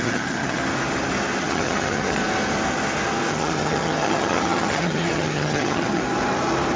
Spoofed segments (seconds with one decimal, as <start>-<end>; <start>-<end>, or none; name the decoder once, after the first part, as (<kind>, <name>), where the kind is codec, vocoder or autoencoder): 0.0-0.6 (vocoder, HiFi-GAN); 1.4-2.2; 3.3-6.0